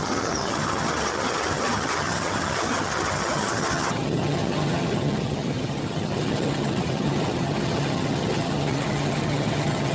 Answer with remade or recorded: remade